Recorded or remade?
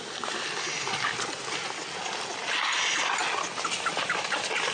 recorded